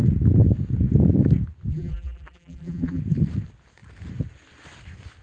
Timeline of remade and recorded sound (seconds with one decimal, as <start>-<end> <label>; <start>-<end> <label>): 0.0-1.7 recorded; 1.7-3.0 remade; 3.0-5.2 recorded